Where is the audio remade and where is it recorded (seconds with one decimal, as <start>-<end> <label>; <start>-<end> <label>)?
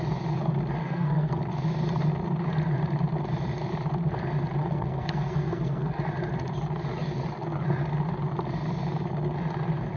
0.0-0.8 recorded; 0.8-1.4 remade; 1.4-4.6 recorded; 4.6-6.0 remade; 6.0-10.0 recorded